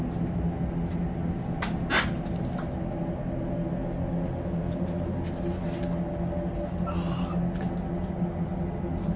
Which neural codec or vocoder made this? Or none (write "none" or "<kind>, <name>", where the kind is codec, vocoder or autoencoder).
none